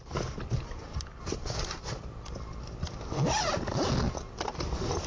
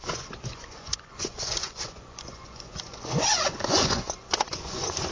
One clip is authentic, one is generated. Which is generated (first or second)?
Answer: second